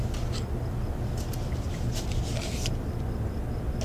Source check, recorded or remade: recorded